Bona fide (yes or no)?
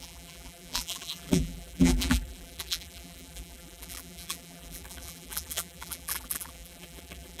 no